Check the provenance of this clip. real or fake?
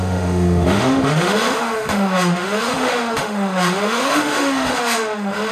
fake